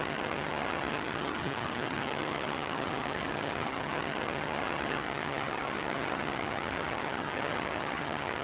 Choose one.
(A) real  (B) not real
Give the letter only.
B